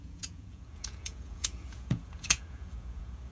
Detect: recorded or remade remade